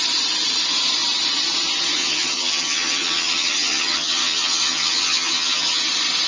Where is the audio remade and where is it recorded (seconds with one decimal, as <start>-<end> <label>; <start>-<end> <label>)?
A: 0.0-2.0 recorded; 2.0-5.8 remade; 5.8-6.3 recorded